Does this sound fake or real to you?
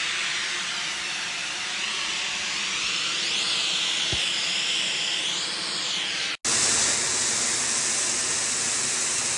real